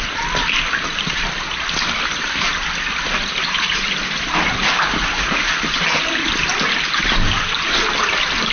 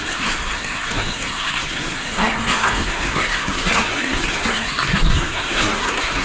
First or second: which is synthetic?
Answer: second